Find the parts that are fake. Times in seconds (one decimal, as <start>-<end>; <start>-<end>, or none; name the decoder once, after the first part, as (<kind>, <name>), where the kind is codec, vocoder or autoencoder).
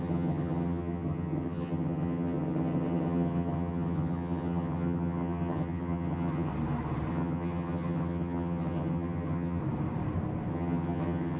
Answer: 0.0-6.5 (vocoder, HiFi-GAN); 7.1-9.6; 10.5-11.4